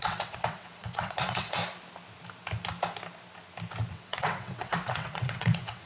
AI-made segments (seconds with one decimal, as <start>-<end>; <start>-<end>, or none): 0.0-1.6; 3.9-5.9